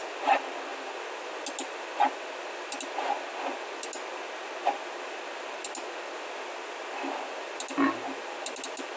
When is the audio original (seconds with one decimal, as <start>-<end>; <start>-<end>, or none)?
0.0-9.0